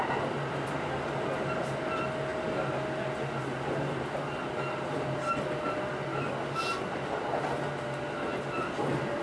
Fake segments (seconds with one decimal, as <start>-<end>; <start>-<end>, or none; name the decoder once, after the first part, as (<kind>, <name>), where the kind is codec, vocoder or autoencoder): none